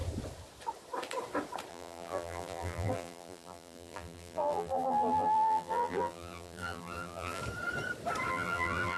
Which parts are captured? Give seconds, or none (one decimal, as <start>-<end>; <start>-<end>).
0.0-1.7; 7.4-8.3